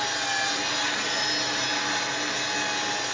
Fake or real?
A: real